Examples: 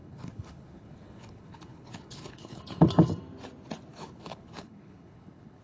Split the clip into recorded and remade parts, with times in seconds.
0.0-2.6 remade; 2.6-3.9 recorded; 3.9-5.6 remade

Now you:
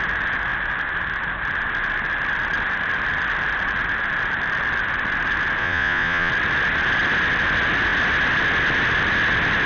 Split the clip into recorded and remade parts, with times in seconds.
0.0-5.6 recorded; 5.6-6.3 remade; 6.3-9.7 recorded

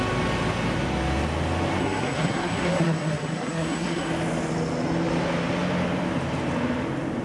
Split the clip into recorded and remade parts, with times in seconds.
0.0-1.8 recorded; 1.8-4.1 remade; 4.1-7.2 recorded